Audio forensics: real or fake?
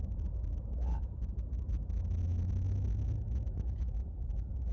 real